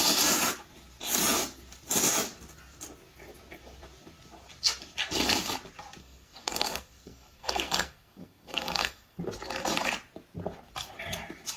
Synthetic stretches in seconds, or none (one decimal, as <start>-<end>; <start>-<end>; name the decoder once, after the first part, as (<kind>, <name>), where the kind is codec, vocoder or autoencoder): 6.0-9.2 (codec, SNAC)